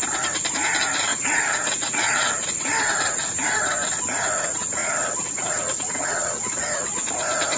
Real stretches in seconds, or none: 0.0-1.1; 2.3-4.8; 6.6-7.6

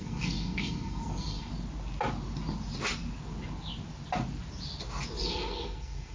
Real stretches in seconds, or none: 1.5-5.2